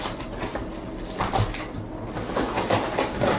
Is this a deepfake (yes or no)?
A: no